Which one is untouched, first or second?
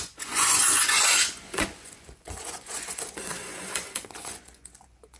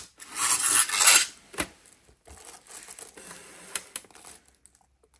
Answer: second